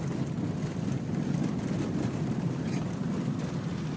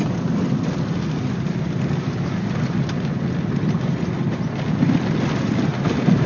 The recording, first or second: second